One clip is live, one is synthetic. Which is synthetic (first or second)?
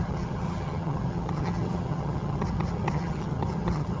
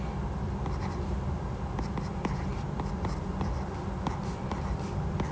first